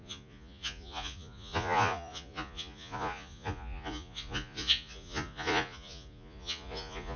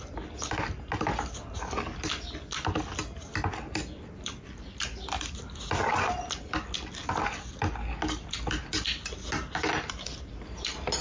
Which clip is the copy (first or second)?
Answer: first